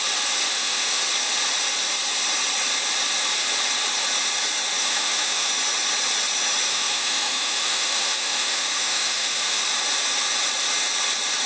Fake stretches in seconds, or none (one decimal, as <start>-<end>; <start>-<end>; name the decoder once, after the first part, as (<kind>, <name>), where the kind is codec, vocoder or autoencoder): 0.5-1.0 (autoencoder, DAC-VAE); 4.8-5.5; 6.7-9.6